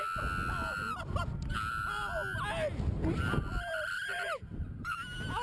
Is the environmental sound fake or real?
real